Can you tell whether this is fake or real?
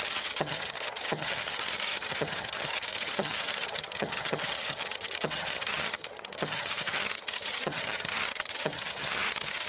fake